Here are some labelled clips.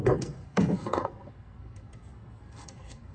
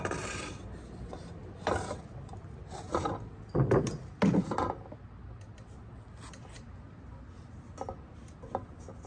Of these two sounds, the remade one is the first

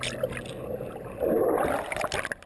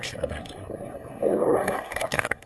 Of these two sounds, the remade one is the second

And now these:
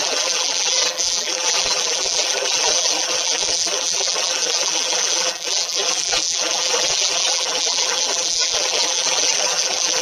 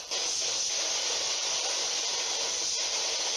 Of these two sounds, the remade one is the first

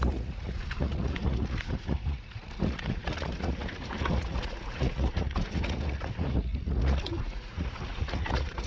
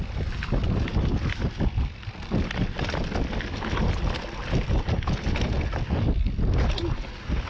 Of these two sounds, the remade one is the first